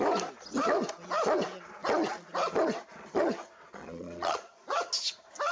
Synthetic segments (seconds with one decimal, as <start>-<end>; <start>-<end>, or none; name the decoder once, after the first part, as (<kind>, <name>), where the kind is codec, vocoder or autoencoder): 3.8-4.8 (vocoder, Vocos)